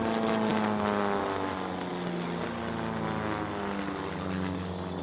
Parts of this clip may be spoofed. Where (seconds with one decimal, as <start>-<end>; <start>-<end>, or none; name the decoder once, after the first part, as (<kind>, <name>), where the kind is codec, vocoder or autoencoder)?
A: none